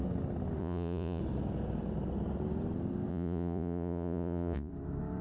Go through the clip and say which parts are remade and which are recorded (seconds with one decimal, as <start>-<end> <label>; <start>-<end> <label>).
0.0-0.6 recorded; 0.6-1.2 remade; 1.2-3.1 recorded; 3.1-4.7 remade; 4.7-5.2 recorded